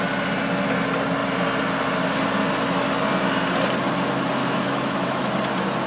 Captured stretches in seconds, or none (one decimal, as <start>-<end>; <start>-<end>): 0.0-4.4; 5.3-5.9